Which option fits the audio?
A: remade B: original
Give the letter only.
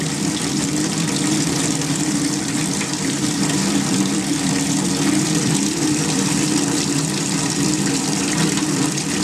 A